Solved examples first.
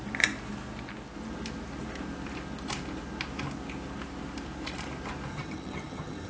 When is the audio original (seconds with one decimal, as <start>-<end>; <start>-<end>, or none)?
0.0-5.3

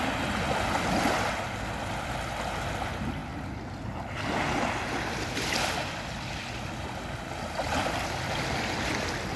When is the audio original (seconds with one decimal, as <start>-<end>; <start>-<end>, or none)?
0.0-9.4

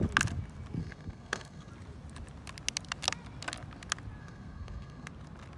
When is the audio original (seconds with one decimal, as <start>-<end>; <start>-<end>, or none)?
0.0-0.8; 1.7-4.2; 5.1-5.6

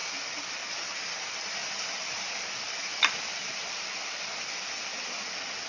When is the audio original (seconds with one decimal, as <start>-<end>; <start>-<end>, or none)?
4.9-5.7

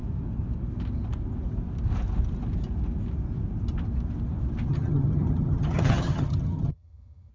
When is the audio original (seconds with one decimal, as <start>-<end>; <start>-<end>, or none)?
0.0-4.7

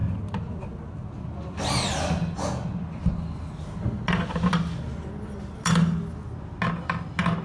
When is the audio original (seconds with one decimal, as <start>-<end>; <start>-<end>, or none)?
0.0-7.4

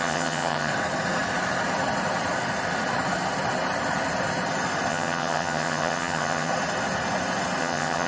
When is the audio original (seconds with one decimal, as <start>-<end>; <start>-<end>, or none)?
0.7-4.9; 6.5-7.6